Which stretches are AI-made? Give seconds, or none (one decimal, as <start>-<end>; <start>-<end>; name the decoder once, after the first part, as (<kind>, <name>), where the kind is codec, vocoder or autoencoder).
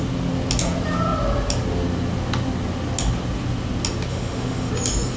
4.1-4.7 (autoencoder, DAC-VAE)